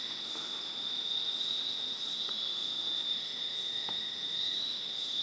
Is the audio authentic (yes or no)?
no